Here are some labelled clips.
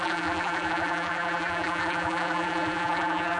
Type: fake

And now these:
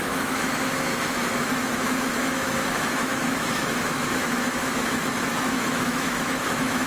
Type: fake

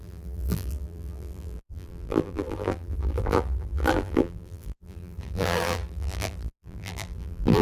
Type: fake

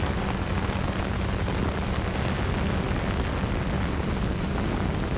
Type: real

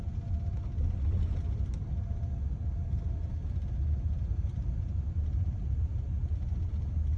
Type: real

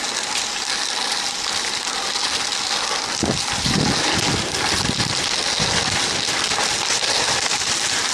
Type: real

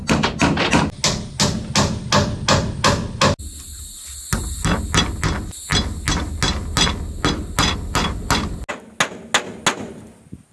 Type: real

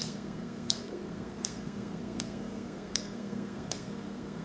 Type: fake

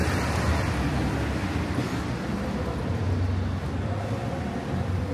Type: real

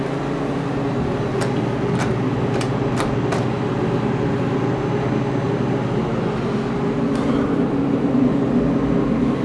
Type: real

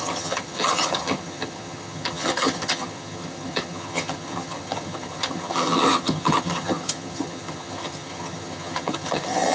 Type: fake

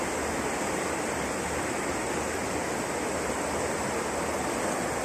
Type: real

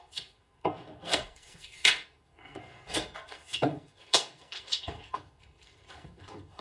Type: fake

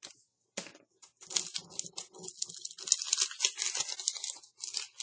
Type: real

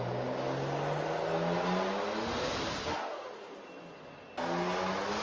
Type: real